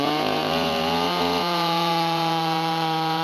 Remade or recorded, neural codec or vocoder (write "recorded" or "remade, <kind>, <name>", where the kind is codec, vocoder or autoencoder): remade, vocoder, Vocos